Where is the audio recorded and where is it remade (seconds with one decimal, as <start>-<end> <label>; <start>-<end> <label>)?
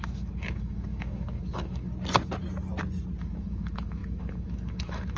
0.0-1.9 remade; 1.9-3.2 recorded; 3.2-5.2 remade